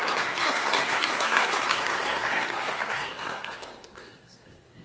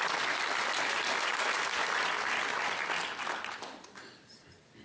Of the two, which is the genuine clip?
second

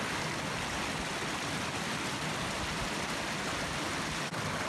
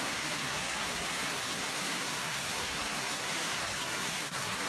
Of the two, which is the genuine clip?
first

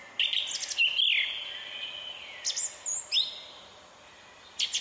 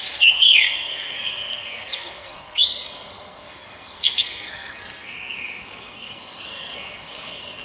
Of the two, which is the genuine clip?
first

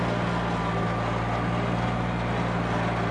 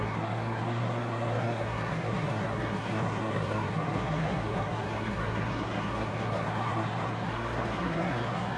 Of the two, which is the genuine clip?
first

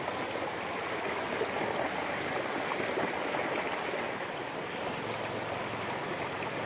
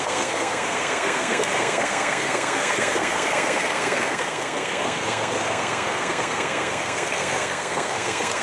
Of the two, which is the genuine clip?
first